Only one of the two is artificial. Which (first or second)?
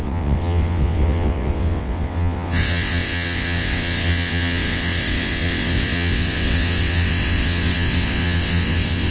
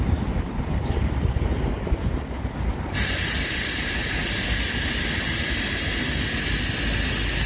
first